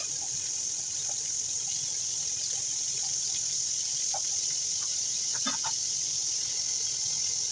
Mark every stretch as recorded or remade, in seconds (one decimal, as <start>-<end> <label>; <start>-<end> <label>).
0.0-4.9 recorded; 4.9-5.6 remade; 5.6-7.5 recorded

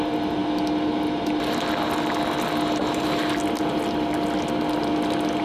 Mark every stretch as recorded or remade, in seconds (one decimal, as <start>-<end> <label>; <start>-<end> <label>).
0.0-5.4 recorded